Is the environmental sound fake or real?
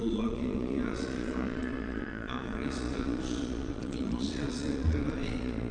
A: fake